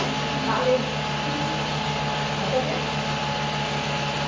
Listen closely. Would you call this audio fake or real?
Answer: real